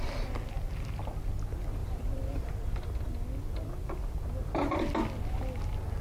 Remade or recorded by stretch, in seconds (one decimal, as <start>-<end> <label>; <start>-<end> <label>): 0.0-1.8 recorded; 1.8-2.5 remade; 2.5-6.0 recorded